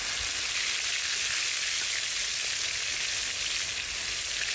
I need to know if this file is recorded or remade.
recorded